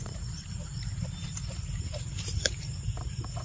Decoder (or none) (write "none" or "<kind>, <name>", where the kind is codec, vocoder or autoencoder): vocoder, BigVGAN v2